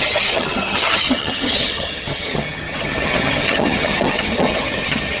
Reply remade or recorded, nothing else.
remade